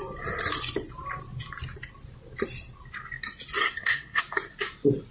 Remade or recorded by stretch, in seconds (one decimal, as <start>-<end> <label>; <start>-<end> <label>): 0.0-3.6 recorded; 3.6-4.2 remade; 4.2-5.1 recorded

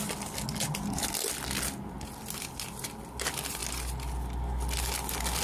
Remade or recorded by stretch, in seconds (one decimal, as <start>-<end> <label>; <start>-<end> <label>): 0.0-5.4 recorded

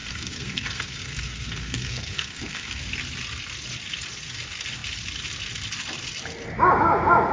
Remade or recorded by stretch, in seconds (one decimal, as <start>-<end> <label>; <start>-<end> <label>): 0.0-2.8 remade; 2.8-7.3 recorded

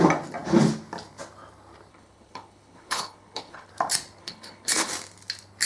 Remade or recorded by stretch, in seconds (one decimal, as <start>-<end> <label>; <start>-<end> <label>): 0.0-1.9 recorded; 1.9-3.7 remade; 3.7-4.2 recorded; 4.2-4.9 remade; 4.9-5.7 recorded

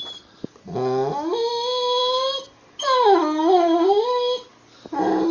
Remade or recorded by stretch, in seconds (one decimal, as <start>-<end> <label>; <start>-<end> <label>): 0.0-5.3 recorded

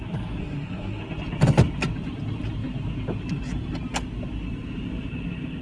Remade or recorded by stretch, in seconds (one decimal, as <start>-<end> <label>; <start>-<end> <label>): 0.0-0.4 recorded; 0.4-1.0 remade; 1.0-5.6 recorded

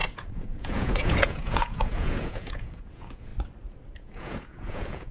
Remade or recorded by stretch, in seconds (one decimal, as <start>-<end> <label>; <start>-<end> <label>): 0.0-3.3 remade; 3.3-3.9 recorded; 3.9-5.1 remade